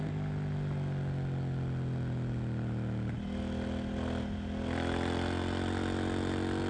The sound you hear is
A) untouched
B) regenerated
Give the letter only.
A